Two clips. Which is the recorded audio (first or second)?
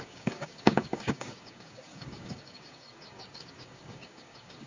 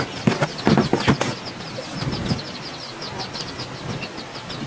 second